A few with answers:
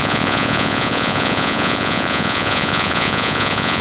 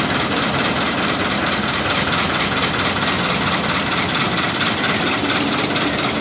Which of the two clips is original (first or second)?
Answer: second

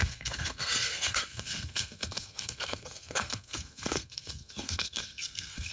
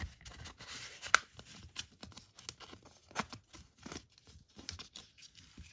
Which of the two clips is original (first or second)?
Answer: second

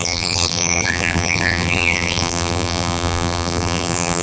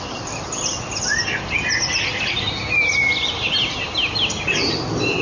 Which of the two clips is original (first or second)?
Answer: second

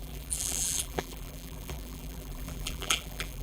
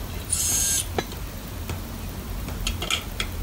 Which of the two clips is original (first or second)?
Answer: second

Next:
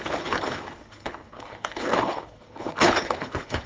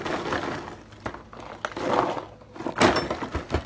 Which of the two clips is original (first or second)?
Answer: second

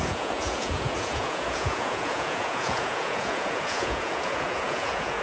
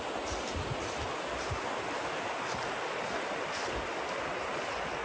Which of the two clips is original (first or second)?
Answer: second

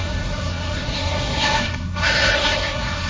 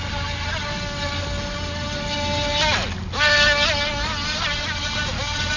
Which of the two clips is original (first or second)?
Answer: second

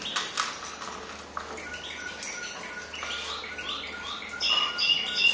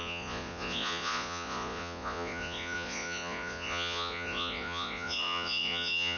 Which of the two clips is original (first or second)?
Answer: first